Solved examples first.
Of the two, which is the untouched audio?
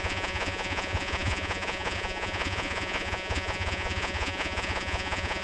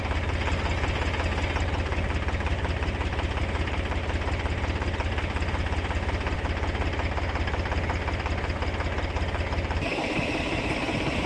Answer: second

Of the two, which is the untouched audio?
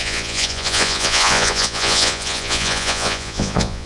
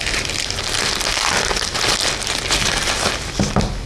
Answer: second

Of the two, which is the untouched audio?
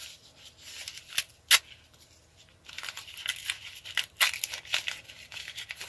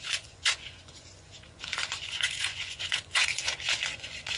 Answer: first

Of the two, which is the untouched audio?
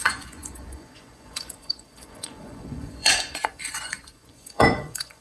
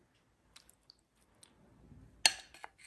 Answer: second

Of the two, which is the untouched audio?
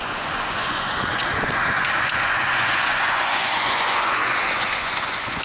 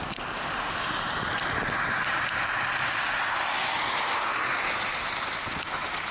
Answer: second